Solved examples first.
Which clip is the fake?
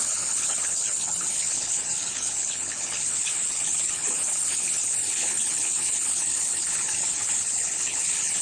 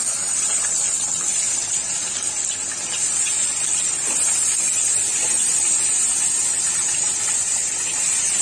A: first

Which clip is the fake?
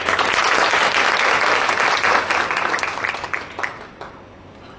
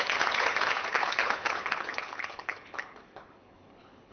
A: second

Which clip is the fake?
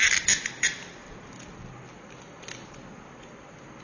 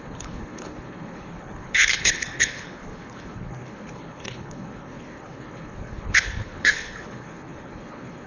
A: second